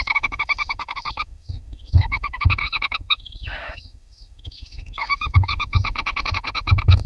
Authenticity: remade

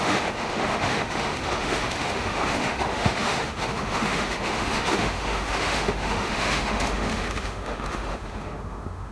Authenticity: remade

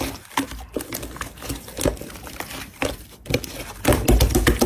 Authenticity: recorded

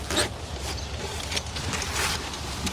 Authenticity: recorded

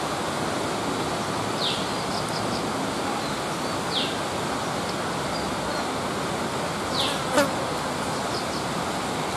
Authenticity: recorded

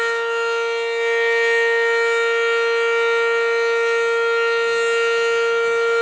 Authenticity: recorded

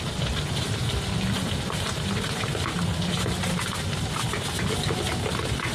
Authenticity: recorded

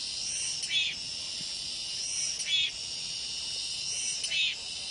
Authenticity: recorded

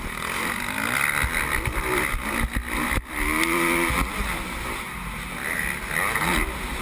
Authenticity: recorded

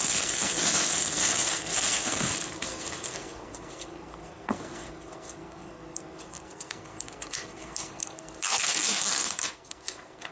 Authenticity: remade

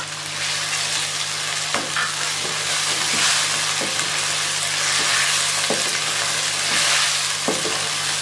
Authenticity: recorded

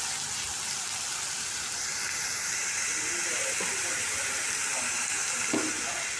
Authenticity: recorded